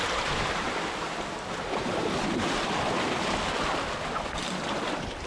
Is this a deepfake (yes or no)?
no